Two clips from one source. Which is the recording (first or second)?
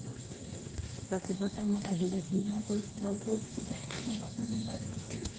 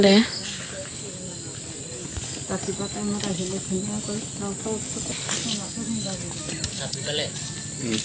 second